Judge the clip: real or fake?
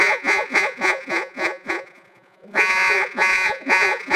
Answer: fake